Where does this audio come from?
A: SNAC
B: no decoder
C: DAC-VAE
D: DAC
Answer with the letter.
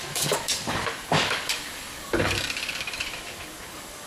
D